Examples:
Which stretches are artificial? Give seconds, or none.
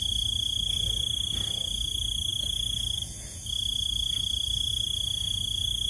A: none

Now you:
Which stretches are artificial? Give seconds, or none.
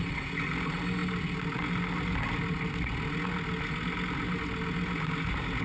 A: none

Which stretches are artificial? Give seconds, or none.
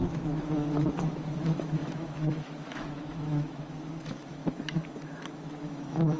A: 0.0-6.2 (autoencoder, DAC-VAE)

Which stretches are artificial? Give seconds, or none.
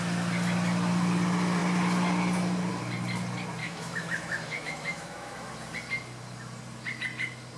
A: 3.6-5.5 (autoencoder, DAC-VAE)